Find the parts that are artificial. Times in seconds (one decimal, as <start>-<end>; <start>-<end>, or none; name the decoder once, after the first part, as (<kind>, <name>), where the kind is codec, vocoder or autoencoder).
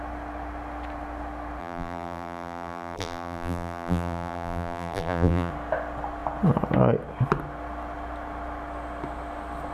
1.6-5.5 (vocoder, BigVGAN v2)